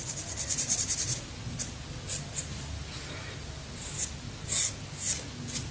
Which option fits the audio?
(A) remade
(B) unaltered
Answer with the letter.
B